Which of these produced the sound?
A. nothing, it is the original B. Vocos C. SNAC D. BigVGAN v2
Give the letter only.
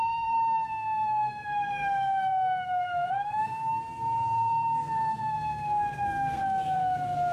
C